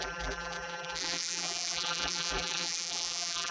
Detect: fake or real fake